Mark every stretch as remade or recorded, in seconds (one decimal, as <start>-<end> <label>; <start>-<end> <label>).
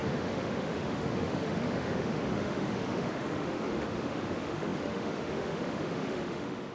0.0-6.7 remade